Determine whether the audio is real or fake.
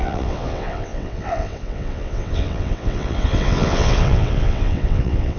fake